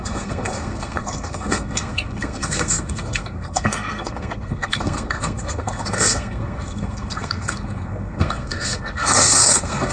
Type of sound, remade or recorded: remade